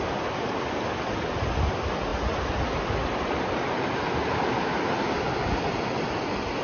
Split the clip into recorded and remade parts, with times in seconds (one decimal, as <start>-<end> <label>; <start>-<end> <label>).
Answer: 0.0-6.6 recorded